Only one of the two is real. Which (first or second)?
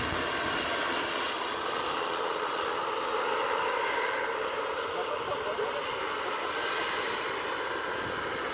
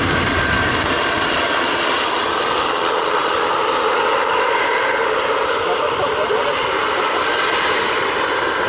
first